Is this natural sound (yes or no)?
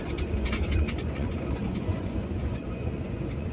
no